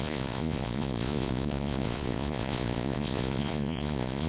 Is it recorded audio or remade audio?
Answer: remade